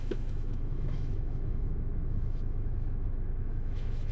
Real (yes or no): no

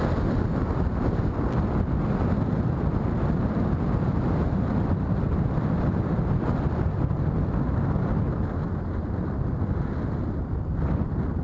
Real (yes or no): yes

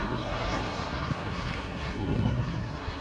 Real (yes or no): no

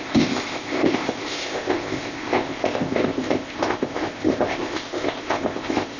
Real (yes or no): no